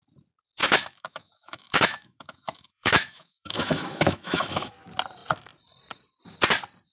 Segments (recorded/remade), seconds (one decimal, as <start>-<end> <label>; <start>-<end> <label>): 0.0-0.6 recorded; 0.6-4.7 remade; 4.7-6.9 recorded